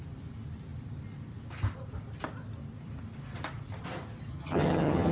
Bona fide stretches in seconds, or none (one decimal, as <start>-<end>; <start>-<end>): 0.0-4.3